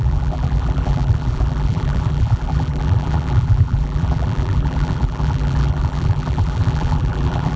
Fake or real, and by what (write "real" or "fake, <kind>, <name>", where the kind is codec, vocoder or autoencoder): fake, vocoder, BigVGAN v2